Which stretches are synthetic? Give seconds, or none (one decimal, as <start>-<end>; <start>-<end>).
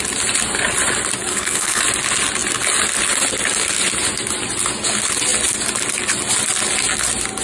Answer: 1.3-1.8